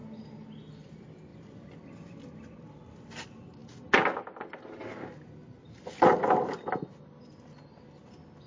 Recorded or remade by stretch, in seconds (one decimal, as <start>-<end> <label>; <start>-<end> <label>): 0.0-8.5 recorded